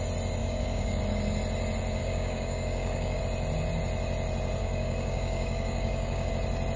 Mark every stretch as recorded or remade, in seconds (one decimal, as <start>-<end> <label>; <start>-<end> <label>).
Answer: 0.0-0.4 recorded; 0.4-1.0 remade; 1.0-2.0 recorded; 2.0-3.2 remade; 3.2-4.6 recorded; 4.6-6.3 remade; 6.3-6.8 recorded